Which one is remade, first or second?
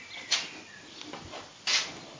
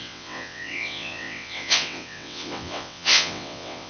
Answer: second